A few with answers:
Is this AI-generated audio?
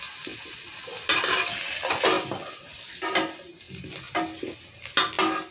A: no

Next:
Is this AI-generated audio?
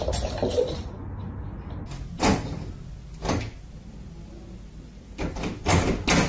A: no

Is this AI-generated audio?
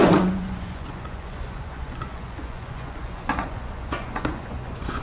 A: yes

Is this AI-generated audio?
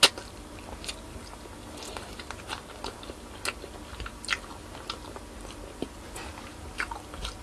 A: no